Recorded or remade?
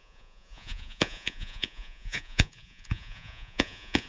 remade